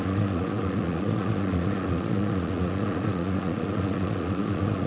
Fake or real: fake